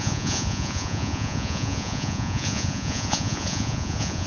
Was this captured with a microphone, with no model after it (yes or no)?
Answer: no